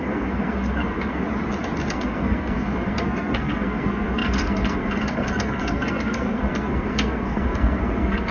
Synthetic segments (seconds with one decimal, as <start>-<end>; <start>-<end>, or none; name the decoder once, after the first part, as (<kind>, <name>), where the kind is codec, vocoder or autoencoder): 0.0-1.2 (codec, SNAC); 1.9-8.3